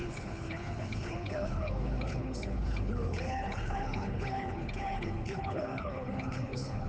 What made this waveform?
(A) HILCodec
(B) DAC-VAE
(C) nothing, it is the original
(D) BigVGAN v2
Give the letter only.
A